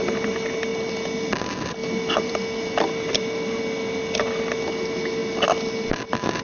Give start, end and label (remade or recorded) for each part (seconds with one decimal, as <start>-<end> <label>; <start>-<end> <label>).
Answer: 0.0-1.8 recorded; 1.8-3.6 remade; 3.6-6.4 recorded